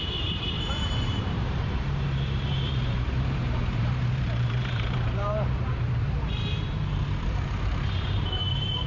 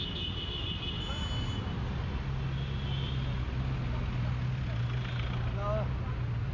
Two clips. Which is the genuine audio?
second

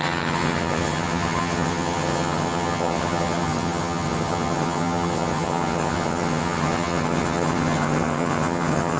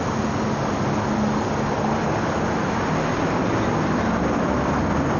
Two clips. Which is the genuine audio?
second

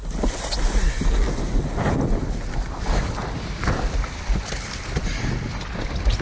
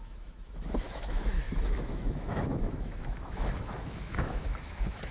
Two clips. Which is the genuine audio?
first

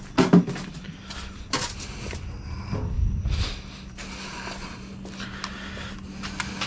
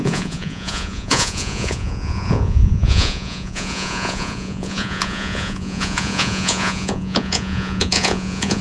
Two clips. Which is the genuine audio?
first